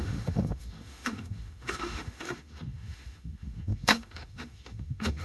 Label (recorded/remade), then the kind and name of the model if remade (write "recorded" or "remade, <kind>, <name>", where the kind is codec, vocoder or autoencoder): remade, autoencoder, DAC-VAE